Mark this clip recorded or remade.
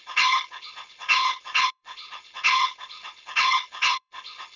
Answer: remade